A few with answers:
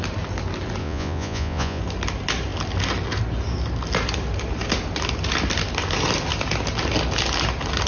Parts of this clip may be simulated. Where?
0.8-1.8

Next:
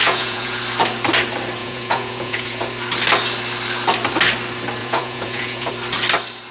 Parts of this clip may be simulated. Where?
0.0-0.6; 1.6-2.6; 4.8-5.7

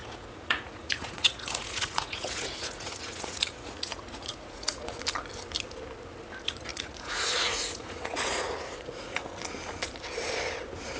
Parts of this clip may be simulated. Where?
0.0-5.0; 6.7-9.2

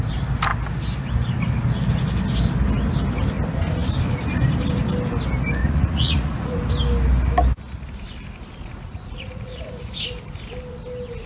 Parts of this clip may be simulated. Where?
5.6-6.6; 8.6-9.7

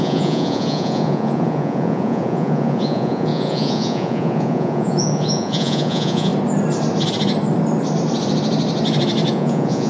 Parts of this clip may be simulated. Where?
0.0-6.3; 9.3-9.9